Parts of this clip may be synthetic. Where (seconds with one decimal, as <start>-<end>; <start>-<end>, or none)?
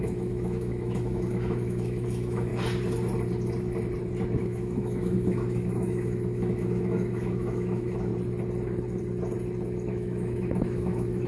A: 0.0-2.5; 4.4-8.1; 9.9-11.3